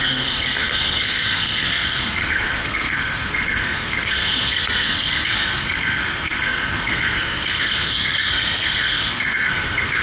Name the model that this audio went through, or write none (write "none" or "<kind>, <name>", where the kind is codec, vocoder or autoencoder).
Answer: codec, SNAC